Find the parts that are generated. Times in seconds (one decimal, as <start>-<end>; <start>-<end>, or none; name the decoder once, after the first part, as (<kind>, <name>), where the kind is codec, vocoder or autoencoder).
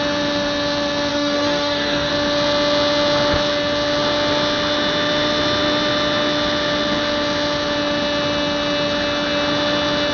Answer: 1.1-2.1 (codec, DAC)